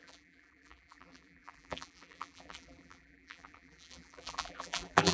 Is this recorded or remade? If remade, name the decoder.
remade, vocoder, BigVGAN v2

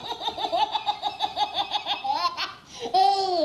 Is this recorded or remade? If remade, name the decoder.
recorded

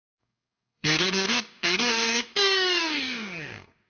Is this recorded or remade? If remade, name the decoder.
remade, codec, DAC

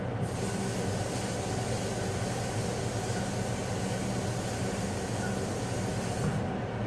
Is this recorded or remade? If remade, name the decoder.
recorded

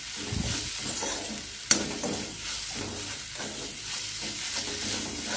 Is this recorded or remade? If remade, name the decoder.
recorded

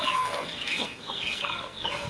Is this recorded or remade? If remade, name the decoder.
remade, codec, SNAC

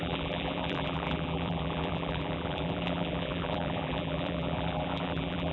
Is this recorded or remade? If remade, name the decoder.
remade, vocoder, BigVGAN v2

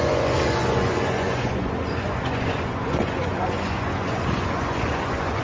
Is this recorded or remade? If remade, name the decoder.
remade, vocoder, Vocos